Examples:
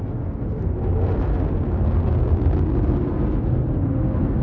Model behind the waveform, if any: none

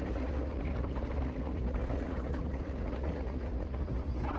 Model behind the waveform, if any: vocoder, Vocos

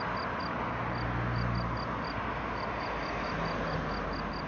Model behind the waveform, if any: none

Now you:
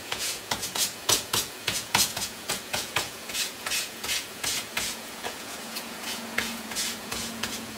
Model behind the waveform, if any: vocoder, Vocos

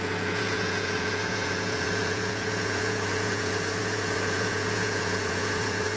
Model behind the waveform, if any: vocoder, Vocos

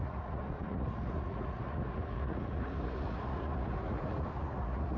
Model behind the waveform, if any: vocoder, Vocos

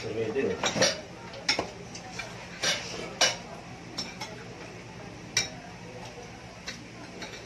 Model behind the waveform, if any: none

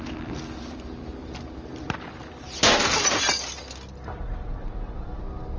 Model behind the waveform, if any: none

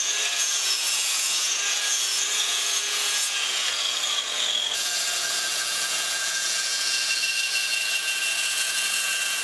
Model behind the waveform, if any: vocoder, Vocos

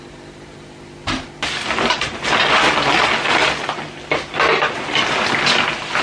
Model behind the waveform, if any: none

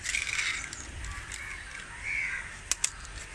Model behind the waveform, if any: none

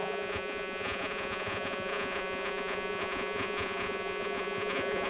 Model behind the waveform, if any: vocoder, Vocos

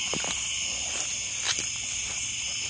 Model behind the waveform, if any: none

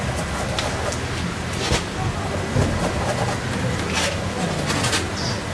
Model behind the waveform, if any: none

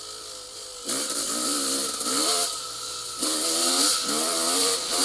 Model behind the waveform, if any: none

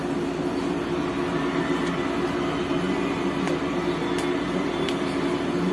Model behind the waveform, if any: none